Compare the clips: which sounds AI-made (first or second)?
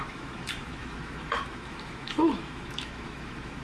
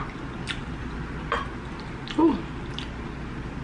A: first